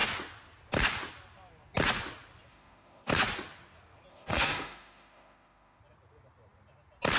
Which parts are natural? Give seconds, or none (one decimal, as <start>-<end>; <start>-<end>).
0.0-2.5; 3.1-4.1; 5.8-7.2